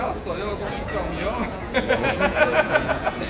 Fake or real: fake